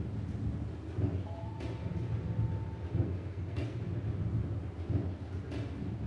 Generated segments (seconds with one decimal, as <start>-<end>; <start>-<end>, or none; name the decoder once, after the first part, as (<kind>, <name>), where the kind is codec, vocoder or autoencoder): 2.9-3.8 (codec, SNAC)